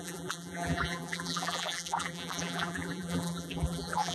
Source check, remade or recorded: remade